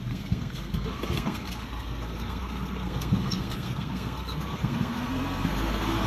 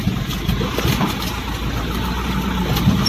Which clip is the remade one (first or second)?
first